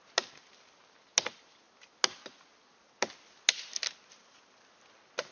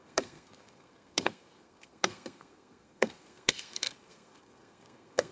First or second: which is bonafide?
first